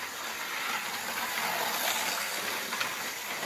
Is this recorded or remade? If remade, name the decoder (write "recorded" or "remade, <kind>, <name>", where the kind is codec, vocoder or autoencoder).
recorded